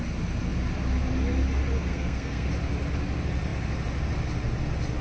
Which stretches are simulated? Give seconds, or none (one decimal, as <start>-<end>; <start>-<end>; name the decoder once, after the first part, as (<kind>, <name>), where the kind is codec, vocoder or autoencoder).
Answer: 1.9-2.5 (codec, SNAC)